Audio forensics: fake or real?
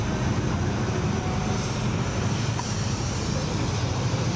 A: fake